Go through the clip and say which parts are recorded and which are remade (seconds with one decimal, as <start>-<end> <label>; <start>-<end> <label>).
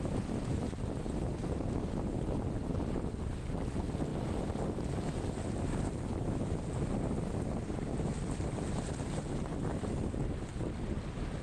0.0-11.4 recorded